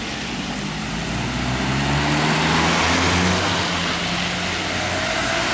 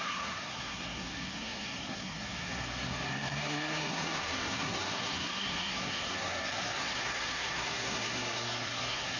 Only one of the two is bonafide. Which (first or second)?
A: first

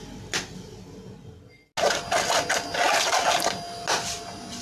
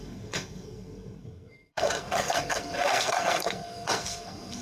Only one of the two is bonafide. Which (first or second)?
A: first